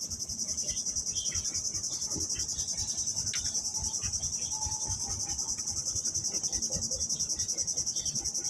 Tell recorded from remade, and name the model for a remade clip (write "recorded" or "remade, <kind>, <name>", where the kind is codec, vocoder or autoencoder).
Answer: recorded